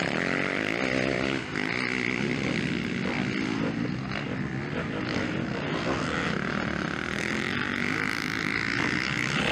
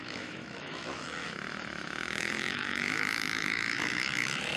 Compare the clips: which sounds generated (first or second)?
second